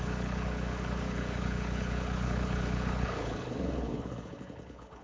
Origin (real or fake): fake